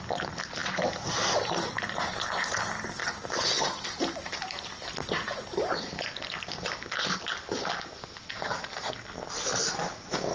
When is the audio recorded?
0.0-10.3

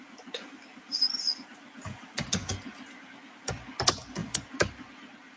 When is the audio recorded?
0.0-4.2

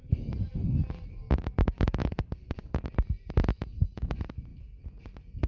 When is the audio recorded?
0.0-2.0; 2.7-5.5

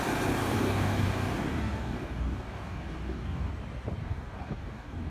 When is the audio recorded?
0.0-0.4; 3.5-4.0